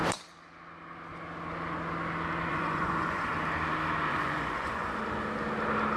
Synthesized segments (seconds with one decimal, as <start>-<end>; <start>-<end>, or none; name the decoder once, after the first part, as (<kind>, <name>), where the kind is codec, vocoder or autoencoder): 2.5-3.3 (vocoder, Vocos); 4.1-5.0